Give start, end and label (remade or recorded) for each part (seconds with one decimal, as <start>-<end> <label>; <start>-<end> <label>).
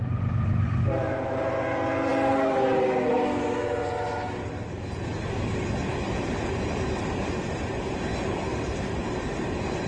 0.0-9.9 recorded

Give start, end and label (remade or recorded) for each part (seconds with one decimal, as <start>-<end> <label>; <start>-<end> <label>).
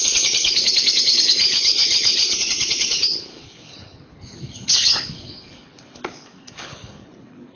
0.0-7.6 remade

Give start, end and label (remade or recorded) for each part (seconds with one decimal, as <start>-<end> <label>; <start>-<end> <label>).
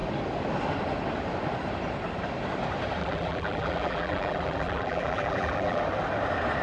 0.0-3.0 recorded; 3.0-5.8 remade; 5.8-6.6 recorded